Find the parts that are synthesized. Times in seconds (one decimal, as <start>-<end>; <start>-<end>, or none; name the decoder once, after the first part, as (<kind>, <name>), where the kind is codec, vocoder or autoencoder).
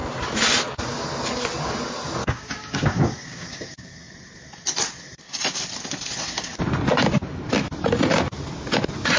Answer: 2.2-4.1 (codec, DAC)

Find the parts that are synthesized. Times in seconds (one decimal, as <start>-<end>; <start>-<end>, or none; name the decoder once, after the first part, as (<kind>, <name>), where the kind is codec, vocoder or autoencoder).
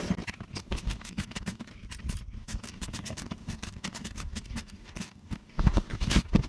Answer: 0.6-1.7 (codec, DAC); 2.4-6.5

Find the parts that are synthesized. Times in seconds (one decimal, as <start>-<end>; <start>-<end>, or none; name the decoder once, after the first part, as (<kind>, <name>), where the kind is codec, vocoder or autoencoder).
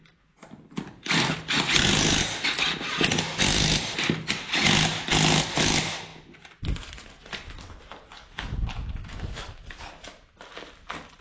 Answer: 8.1-9.9 (codec, DAC)